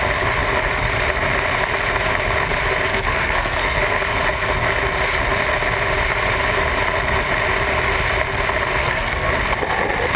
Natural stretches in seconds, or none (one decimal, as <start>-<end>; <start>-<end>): 0.0-2.9; 3.8-8.8; 9.3-10.2